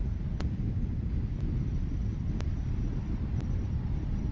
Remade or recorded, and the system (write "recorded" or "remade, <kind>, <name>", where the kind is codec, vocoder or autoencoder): recorded